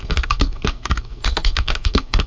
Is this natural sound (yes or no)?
no